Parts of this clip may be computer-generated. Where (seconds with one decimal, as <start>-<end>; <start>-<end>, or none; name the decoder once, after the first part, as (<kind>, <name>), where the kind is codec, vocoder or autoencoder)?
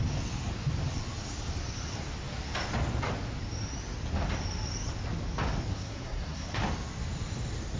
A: 5.7-6.6 (codec, SNAC)